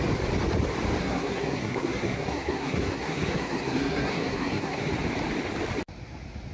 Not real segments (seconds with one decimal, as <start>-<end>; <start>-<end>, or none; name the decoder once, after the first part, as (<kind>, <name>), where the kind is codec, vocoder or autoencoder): 1.0-4.9 (codec, SNAC)